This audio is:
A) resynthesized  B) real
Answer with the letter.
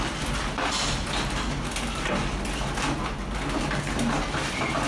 B